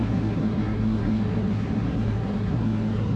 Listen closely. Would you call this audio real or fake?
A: fake